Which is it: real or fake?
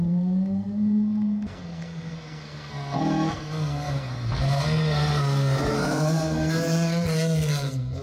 fake